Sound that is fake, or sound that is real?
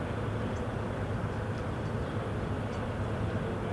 real